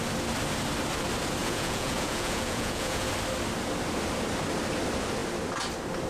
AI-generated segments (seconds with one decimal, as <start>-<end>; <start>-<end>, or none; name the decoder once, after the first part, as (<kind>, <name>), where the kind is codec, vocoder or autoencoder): 1.4-3.1 (vocoder, Vocos)